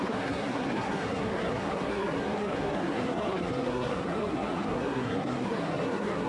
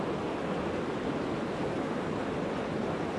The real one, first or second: second